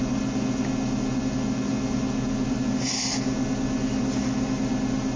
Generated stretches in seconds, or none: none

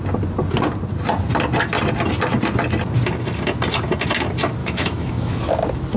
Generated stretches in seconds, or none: 4.6-5.5

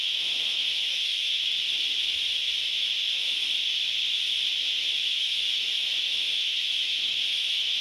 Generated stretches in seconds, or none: 0.0-1.5; 2.6-3.3; 4.9-7.8

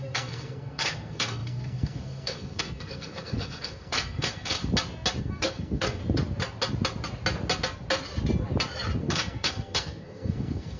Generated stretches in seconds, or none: 0.0-4.6; 5.2-6.0; 9.0-10.8

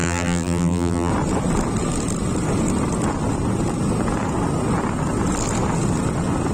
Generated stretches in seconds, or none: 0.0-1.1